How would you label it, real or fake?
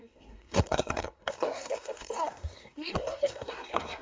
fake